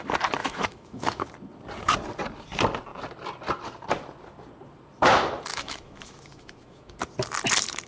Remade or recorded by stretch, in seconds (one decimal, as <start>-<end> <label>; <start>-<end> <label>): 0.0-0.4 recorded; 0.4-1.3 remade; 1.3-5.5 recorded; 5.5-7.0 remade; 7.0-7.9 recorded